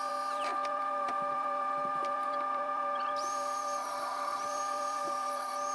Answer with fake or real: fake